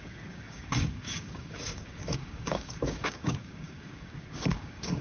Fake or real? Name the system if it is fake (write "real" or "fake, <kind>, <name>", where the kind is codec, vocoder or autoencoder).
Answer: fake, codec, DAC